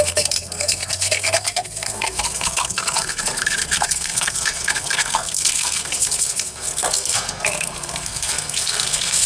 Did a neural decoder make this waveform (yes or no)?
yes